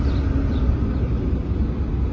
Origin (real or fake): real